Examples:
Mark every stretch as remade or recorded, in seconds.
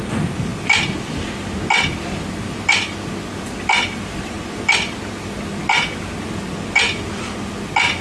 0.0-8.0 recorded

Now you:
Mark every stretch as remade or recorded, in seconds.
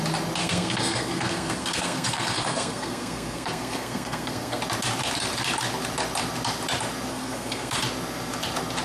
0.0-0.4 recorded; 0.4-4.6 remade; 4.6-7.1 recorded; 7.1-7.8 remade; 7.8-8.8 recorded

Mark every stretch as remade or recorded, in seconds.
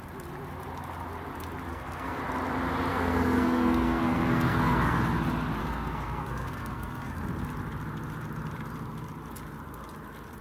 0.0-1.7 recorded; 1.7-2.2 remade; 2.2-2.9 recorded; 2.9-5.0 remade; 5.0-5.6 recorded; 5.6-7.2 remade; 7.2-10.4 recorded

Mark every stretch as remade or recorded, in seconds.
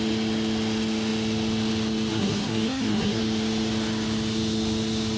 0.0-2.1 recorded; 2.1-3.2 remade; 3.2-5.2 recorded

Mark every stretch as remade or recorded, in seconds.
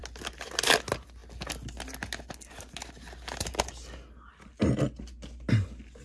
0.0-6.0 recorded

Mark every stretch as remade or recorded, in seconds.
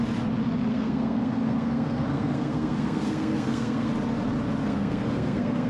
0.0-0.7 recorded; 0.7-3.9 remade; 3.9-4.6 recorded; 4.6-5.7 remade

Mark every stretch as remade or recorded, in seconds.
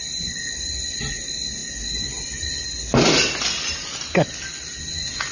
0.0-5.3 recorded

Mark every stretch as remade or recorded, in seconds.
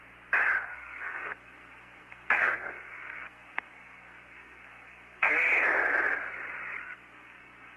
0.0-0.7 recorded; 0.7-5.3 remade; 5.3-6.8 recorded; 6.8-7.8 remade